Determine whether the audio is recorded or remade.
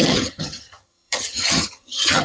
remade